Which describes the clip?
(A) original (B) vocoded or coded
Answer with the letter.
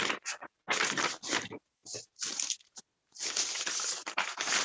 A